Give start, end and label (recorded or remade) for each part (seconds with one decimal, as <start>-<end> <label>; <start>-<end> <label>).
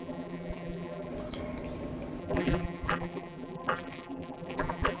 0.0-1.1 remade; 1.1-2.2 recorded; 2.2-5.0 remade